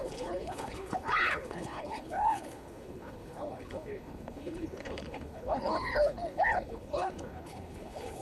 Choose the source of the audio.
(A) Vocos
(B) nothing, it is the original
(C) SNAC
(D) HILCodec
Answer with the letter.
D